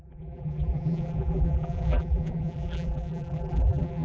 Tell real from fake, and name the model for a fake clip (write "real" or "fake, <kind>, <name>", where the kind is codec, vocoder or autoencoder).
fake, vocoder, BigVGAN v2